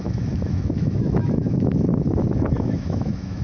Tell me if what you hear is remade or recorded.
remade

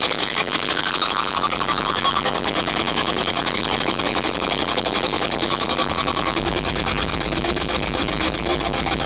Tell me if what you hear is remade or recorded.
remade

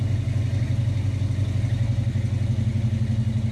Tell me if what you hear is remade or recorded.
recorded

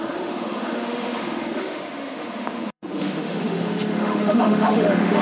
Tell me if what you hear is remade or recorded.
remade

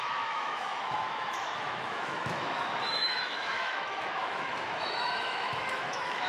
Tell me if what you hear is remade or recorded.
remade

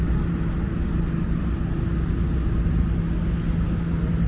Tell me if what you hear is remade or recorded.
recorded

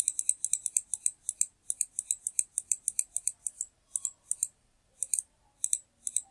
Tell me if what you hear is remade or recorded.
recorded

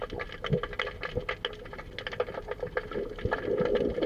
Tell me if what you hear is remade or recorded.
recorded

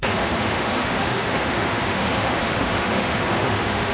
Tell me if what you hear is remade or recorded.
remade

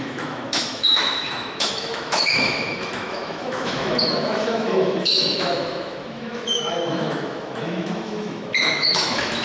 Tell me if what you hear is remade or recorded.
remade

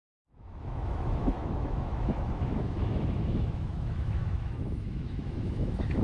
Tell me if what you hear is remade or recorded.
remade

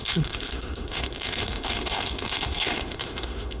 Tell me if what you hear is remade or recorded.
remade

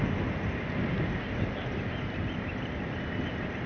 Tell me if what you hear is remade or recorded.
recorded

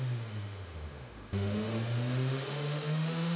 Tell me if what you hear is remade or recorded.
remade